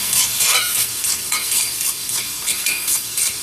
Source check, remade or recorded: remade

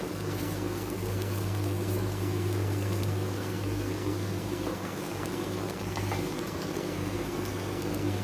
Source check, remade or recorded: remade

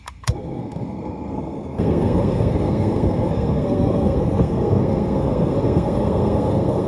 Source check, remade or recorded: remade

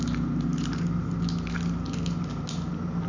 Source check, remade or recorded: recorded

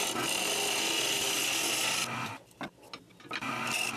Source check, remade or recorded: recorded